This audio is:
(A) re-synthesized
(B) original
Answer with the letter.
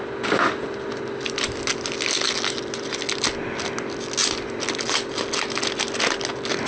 B